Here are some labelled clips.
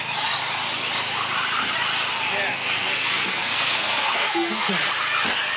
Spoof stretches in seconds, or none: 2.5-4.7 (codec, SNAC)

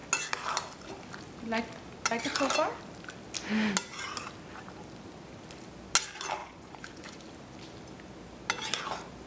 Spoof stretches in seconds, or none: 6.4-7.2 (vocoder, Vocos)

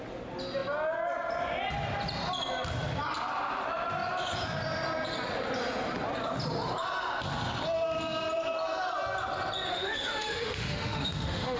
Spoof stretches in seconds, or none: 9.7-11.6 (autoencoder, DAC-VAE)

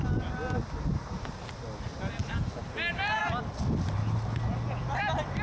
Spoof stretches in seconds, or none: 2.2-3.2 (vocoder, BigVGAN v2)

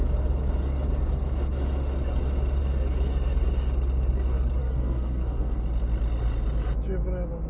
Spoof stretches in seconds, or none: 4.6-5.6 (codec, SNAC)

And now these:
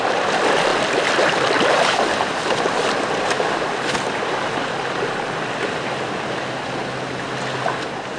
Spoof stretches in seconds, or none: none

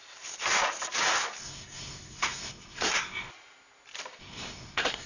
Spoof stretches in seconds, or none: 1.4-3.3 (codec, SNAC); 4.2-5.1

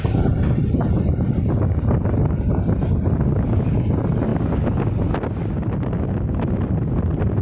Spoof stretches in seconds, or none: none